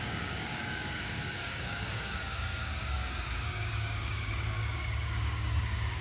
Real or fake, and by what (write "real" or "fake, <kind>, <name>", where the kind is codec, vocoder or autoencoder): fake, codec, DAC